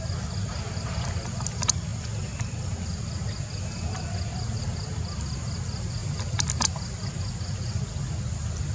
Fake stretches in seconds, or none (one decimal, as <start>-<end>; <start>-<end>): none